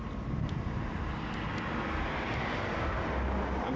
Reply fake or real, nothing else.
real